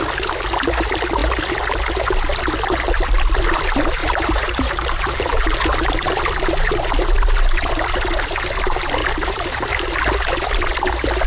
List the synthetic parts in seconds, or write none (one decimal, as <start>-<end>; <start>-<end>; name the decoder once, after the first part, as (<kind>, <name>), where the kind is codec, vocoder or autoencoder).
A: 4.0-6.2 (vocoder, BigVGAN v2); 9.0-9.8